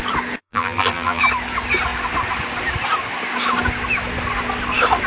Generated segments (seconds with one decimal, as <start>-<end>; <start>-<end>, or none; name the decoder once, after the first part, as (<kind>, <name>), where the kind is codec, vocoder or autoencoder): 0.4-1.2 (vocoder, BigVGAN v2)